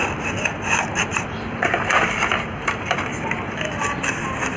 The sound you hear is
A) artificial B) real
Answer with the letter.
B